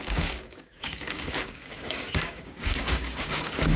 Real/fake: fake